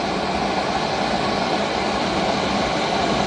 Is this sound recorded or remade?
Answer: recorded